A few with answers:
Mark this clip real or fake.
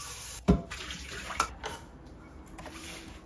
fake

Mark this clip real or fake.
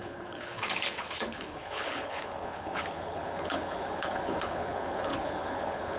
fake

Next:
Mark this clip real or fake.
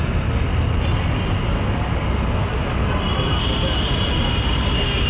real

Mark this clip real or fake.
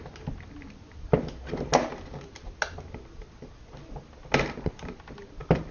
real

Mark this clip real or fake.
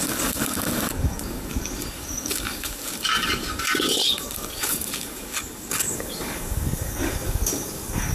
fake